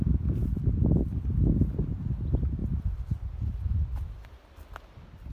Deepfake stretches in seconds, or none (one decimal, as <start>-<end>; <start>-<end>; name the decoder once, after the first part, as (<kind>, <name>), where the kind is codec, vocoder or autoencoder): 2.6-3.1 (vocoder, BigVGAN v2)